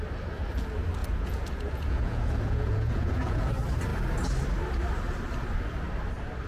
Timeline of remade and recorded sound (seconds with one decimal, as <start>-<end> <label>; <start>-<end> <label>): 0.0-1.0 recorded; 1.0-3.5 remade; 3.5-6.5 recorded